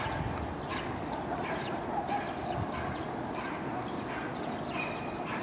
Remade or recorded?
recorded